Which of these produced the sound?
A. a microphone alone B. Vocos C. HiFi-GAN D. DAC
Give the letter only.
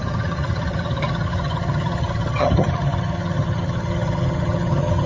C